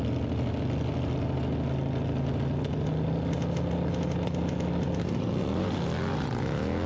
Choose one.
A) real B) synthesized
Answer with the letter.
A